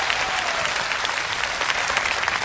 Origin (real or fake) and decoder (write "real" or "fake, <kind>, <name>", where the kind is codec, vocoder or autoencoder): real